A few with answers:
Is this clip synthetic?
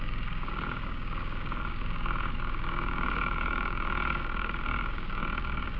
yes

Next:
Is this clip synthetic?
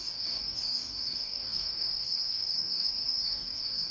yes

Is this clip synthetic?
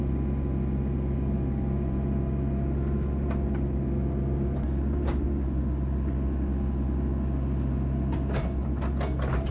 no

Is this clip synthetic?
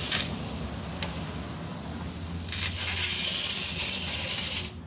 no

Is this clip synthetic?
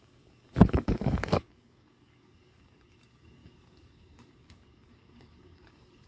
yes